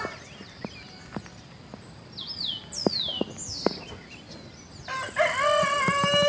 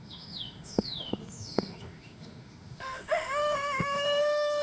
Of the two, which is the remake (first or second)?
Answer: second